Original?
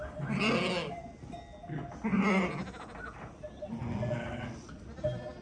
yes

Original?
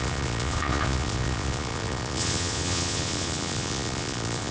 no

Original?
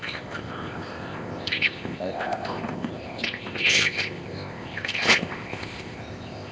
no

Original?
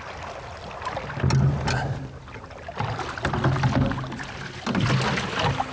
yes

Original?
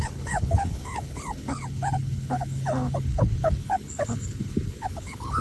no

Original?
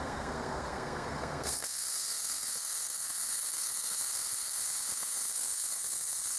no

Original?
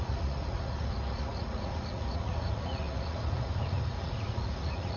no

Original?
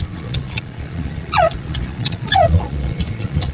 no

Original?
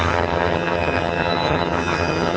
no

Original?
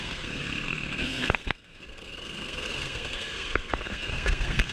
no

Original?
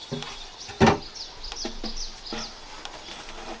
yes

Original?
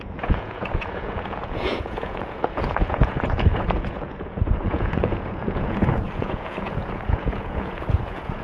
no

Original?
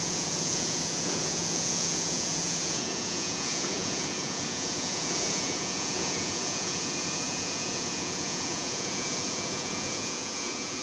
no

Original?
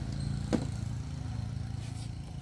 yes